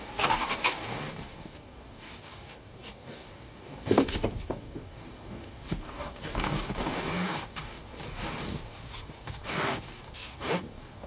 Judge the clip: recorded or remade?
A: remade